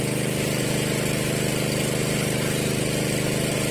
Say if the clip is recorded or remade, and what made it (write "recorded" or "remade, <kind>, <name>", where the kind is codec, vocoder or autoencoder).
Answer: remade, vocoder, BigVGAN v2